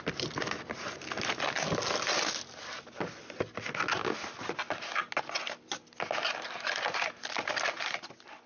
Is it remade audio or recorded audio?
recorded